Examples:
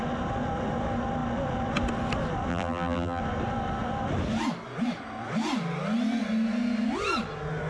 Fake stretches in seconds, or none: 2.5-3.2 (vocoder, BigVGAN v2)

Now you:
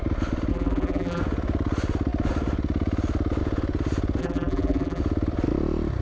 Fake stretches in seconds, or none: 0.5-1.2 (vocoder, BigVGAN v2); 4.2-5.0

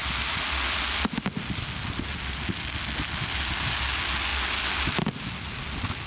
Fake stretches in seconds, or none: none